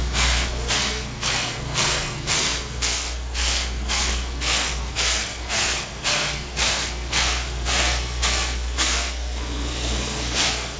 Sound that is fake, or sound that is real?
fake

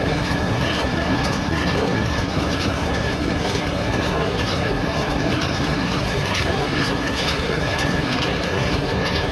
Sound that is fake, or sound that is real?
fake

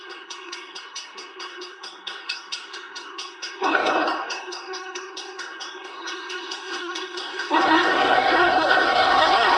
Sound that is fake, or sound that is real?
fake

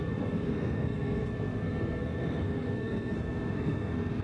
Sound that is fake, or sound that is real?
fake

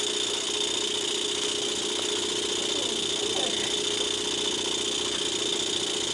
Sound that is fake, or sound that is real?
real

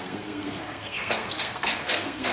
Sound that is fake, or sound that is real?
fake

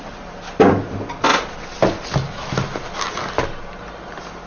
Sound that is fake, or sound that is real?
real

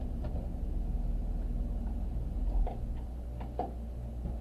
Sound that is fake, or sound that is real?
real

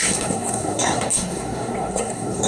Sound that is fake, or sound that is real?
fake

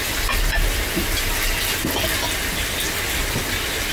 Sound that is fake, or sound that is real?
real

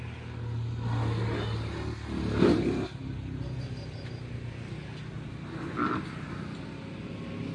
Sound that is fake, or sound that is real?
real